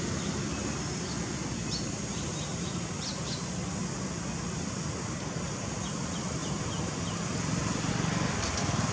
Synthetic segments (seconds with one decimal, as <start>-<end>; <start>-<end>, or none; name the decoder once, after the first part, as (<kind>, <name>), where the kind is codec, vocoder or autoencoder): none